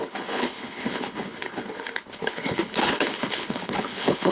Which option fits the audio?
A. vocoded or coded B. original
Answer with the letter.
A